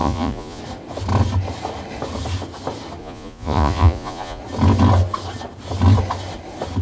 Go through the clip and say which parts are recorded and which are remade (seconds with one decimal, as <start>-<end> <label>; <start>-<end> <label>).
0.0-0.6 remade; 0.6-3.0 recorded; 3.0-4.4 remade; 4.4-6.8 recorded